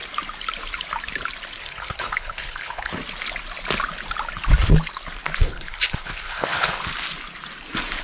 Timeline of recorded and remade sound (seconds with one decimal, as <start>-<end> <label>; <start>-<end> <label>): 0.0-1.6 recorded; 1.6-2.9 remade; 2.9-5.4 recorded; 5.4-6.8 remade; 6.8-8.0 recorded